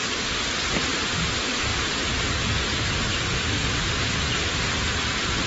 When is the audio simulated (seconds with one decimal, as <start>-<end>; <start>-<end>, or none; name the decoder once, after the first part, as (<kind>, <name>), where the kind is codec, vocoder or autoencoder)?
0.0-5.5 (vocoder, BigVGAN v2)